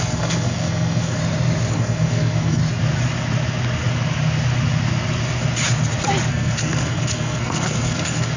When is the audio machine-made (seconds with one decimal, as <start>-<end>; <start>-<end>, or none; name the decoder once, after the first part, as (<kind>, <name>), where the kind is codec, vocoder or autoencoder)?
0.0-1.2 (codec, SNAC); 1.7-2.6; 6.3-8.4